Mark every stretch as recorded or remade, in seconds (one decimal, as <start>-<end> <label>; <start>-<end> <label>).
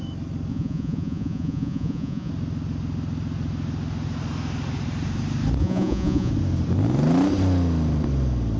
0.0-0.5 recorded; 0.5-2.3 remade; 2.3-5.6 recorded; 5.6-6.3 remade; 6.3-8.6 recorded